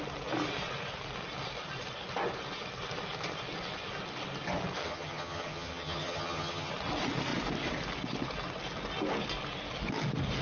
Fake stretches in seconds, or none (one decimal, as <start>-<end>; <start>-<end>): 4.8-6.7